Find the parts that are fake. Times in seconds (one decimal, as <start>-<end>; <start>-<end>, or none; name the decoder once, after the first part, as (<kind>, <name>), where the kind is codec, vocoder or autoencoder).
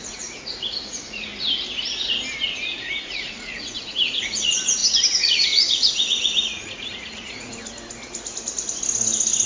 0.0-1.3 (vocoder, Vocos); 2.6-7.6